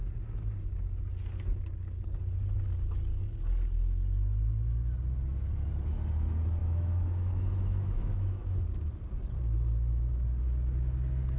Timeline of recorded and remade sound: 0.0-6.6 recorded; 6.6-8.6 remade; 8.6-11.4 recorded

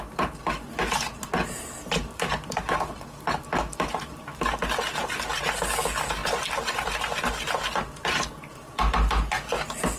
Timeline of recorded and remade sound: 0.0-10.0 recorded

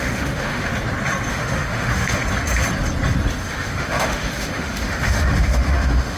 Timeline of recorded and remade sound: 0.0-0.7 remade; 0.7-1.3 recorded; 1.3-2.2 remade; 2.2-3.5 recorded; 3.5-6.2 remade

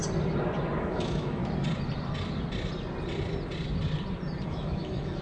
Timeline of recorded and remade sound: 0.0-0.8 recorded; 0.8-1.4 remade; 1.4-4.5 recorded; 4.5-5.2 remade

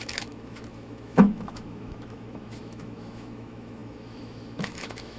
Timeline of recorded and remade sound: 0.0-5.2 remade

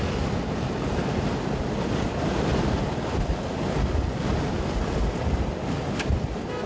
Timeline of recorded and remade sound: 0.0-6.7 recorded

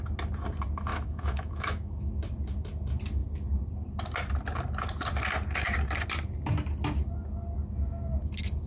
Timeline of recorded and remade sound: 0.0-0.9 recorded; 0.9-2.1 remade; 2.1-8.7 recorded

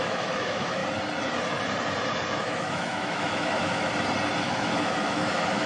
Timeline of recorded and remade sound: 0.0-0.8 remade; 0.8-2.4 recorded; 2.4-3.9 remade; 3.9-4.4 recorded; 4.4-5.7 remade